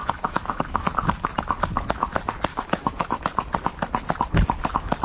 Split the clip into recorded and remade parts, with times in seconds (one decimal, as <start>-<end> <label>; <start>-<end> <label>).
0.0-0.9 remade; 0.9-2.5 recorded; 2.5-3.2 remade; 3.2-5.0 recorded